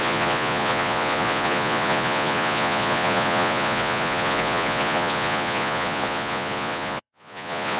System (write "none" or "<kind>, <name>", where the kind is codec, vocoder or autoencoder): vocoder, Vocos